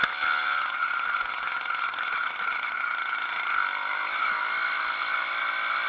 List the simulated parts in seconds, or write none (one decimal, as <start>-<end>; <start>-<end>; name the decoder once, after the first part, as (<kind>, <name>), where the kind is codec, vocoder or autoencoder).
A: none